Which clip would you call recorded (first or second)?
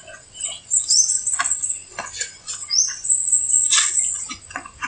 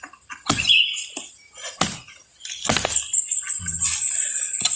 second